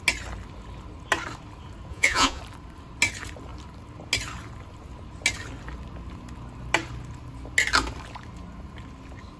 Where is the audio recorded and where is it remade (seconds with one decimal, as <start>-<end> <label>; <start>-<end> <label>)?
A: 0.0-1.9 recorded; 1.9-2.4 remade; 2.4-9.4 recorded